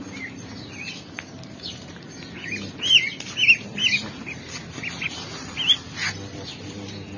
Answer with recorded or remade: recorded